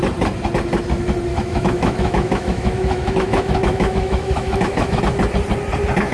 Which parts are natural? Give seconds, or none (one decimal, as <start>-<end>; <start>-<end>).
0.0-1.3; 5.0-6.1